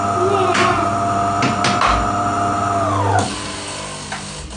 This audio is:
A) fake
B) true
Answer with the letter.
B